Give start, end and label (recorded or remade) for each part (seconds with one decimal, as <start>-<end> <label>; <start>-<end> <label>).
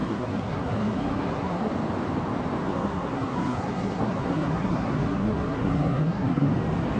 0.0-1.7 remade; 1.7-2.6 recorded; 2.6-6.5 remade; 6.5-7.0 recorded